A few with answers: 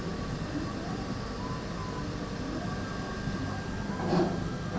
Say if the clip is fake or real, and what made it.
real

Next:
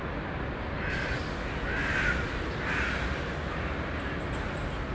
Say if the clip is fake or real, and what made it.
real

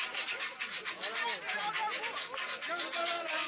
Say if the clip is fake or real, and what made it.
real